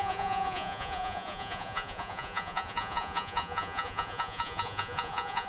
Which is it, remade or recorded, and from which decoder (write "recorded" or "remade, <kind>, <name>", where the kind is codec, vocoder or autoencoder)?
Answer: remade, vocoder, Vocos